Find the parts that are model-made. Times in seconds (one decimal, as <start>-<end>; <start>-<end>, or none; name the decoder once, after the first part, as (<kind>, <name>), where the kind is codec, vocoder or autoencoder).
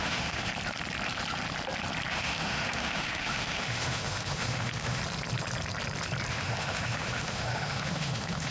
0.0-0.5 (autoencoder, DAC-VAE); 2.1-5.0; 6.3-8.5